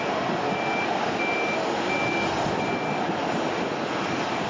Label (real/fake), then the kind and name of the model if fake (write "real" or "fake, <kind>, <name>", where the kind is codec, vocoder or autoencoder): real